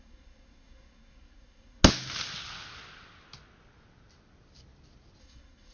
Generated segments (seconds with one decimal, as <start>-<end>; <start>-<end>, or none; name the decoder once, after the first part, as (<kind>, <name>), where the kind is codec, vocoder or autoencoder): 0.0-1.8 (codec, SNAC); 5.2-5.7